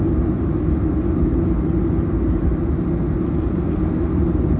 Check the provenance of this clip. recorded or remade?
recorded